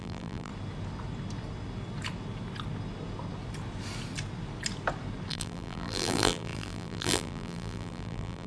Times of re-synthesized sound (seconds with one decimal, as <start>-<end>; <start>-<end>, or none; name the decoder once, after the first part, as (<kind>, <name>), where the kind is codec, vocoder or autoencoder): 0.0-0.5 (vocoder, BigVGAN v2); 5.3-8.5